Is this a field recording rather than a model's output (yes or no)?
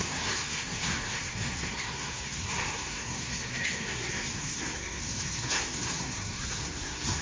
no